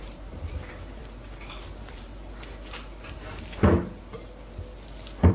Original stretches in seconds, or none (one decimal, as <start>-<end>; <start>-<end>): 1.0-1.5; 2.1-5.3